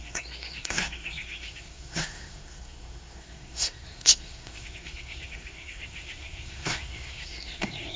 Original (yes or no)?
no